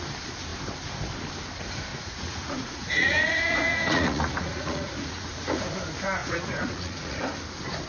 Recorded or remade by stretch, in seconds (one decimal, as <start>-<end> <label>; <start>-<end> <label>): 0.0-1.9 recorded; 1.9-5.6 remade; 5.6-6.2 recorded; 6.2-7.2 remade; 7.2-7.9 recorded